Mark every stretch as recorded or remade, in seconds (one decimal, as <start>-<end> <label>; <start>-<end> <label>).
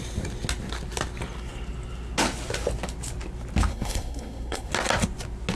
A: 0.0-3.7 recorded; 3.7-4.7 remade; 4.7-5.6 recorded